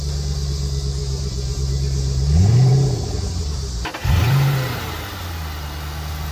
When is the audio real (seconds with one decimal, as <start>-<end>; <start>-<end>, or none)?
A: 0.0-1.0; 4.7-6.3